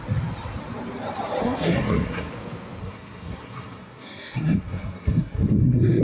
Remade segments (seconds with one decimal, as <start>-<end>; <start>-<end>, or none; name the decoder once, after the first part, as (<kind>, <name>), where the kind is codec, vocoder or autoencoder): 1.4-2.3 (codec, SNAC); 2.8-6.0